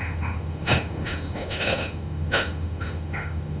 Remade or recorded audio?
remade